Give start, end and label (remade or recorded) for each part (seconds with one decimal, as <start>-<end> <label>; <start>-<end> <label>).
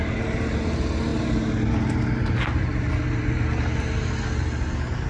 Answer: 0.0-5.1 remade